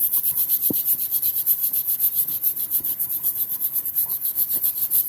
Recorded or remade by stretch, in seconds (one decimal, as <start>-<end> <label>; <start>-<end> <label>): 0.0-5.1 recorded